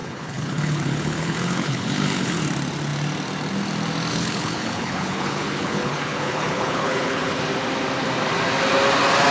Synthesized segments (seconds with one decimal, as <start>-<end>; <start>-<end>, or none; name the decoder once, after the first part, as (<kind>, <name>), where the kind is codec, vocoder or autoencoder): 0.0-2.4 (codec, HILCodec); 4.1-7.4